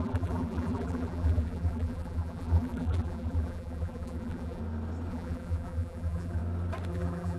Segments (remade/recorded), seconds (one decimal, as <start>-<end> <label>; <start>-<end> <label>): 0.0-4.6 remade; 4.6-5.1 recorded; 5.1-6.4 remade; 6.4-6.9 recorded; 6.9-7.4 remade

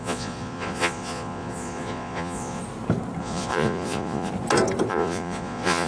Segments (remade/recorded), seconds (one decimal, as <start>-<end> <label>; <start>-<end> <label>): 0.0-2.6 remade; 2.6-3.2 recorded; 3.2-4.3 remade; 4.3-4.9 recorded; 4.9-5.9 remade

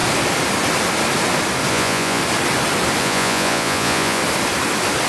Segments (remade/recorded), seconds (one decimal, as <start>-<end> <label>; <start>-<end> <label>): 0.0-1.7 recorded; 1.7-2.2 remade; 2.2-3.0 recorded; 3.0-4.2 remade; 4.2-5.1 recorded

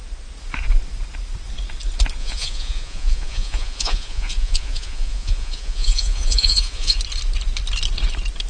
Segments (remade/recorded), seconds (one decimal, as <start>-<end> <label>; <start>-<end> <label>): 0.0-2.2 recorded; 2.2-7.0 remade; 7.0-8.5 recorded

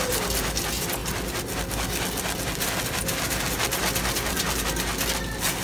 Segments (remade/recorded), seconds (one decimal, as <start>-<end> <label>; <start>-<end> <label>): 0.0-5.6 recorded

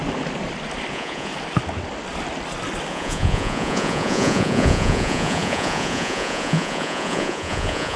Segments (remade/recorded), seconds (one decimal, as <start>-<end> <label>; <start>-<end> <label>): 0.0-0.9 recorded; 0.9-1.3 remade; 1.3-2.9 recorded; 2.9-8.0 remade

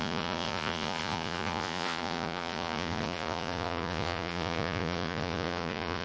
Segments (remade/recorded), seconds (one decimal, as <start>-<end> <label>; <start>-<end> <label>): 0.0-6.0 remade